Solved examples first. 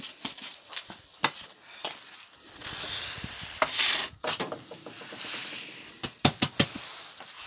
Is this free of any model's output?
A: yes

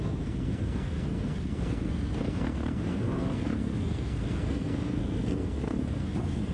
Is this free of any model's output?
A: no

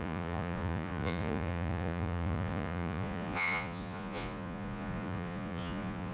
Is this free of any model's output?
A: no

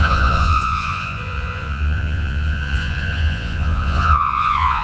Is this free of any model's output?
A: no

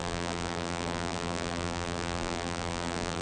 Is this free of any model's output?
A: no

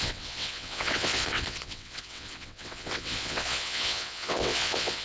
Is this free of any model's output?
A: no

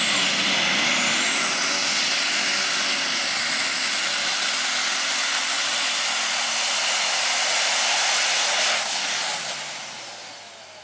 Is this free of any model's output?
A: yes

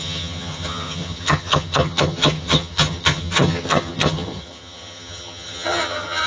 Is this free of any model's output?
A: no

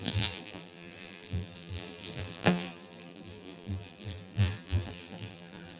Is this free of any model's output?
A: no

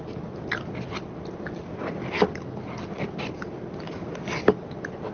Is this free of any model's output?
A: yes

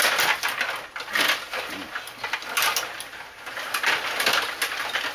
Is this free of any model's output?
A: yes